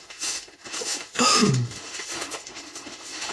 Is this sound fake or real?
fake